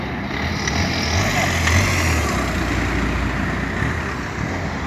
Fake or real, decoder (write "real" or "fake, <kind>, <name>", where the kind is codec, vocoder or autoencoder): real